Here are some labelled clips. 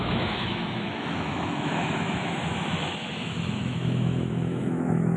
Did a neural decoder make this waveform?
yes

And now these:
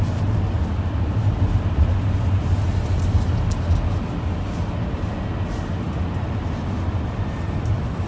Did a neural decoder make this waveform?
no